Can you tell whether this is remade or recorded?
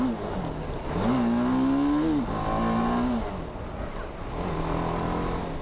recorded